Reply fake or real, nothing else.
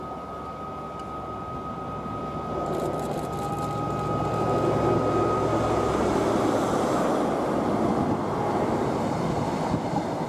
real